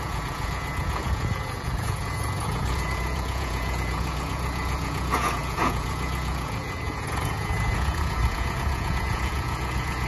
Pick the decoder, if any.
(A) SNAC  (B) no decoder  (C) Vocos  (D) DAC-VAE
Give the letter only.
C